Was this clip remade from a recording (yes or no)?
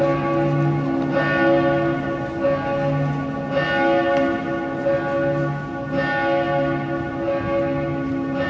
no